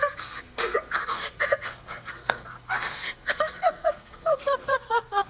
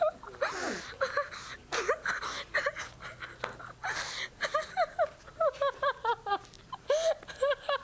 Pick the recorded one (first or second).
second